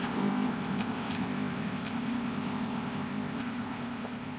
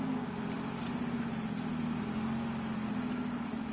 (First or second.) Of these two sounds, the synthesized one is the first